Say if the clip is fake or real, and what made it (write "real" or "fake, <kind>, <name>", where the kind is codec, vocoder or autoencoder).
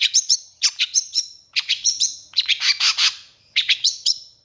fake, vocoder, Vocos